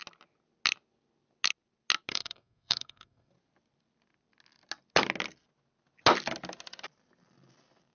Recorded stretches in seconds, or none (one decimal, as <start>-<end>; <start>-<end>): 0.0-2.1; 3.3-7.9